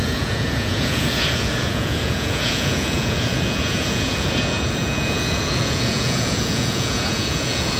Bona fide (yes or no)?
no